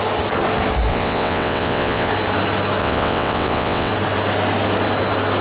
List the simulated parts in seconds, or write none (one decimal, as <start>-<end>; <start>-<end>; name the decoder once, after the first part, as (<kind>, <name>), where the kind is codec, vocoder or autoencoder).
0.9-2.1 (vocoder, WaveNeXt); 2.8-3.9